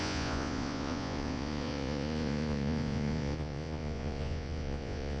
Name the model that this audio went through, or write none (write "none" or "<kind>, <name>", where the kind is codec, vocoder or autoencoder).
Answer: vocoder, Vocos